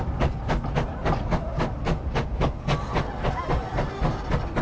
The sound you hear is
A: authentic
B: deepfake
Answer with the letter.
A